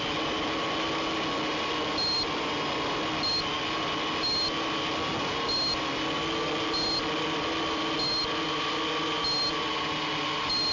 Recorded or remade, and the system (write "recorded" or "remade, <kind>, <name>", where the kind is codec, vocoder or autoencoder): recorded